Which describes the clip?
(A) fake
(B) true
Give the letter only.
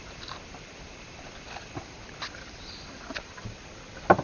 B